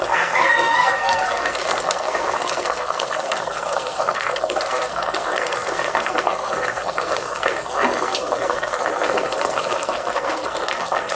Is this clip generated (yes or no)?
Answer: yes